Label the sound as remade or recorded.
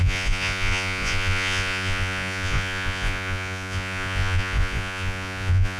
remade